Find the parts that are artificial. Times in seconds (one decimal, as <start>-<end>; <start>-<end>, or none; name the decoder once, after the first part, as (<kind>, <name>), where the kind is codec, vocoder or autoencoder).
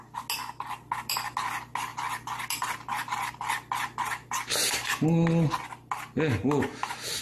none